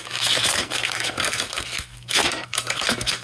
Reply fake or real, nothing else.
fake